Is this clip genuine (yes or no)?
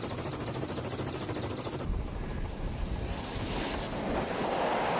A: yes